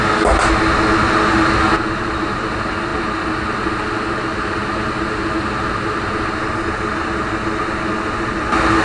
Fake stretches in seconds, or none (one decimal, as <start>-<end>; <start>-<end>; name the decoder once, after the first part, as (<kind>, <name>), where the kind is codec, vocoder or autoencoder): none